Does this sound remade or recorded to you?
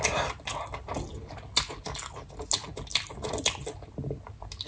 recorded